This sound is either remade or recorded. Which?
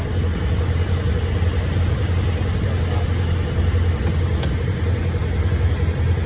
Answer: recorded